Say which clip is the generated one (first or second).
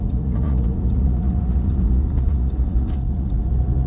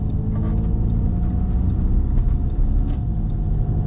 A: first